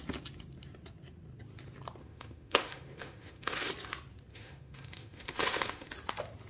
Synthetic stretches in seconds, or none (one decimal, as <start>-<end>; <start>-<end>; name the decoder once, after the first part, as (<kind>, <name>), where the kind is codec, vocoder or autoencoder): 2.0-3.7 (autoencoder, DAC-VAE); 4.3-5.9